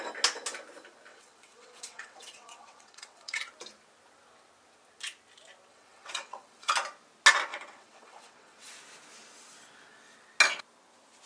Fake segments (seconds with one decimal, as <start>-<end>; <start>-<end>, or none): 1.1-3.4; 5.7-6.7; 7.5-8.7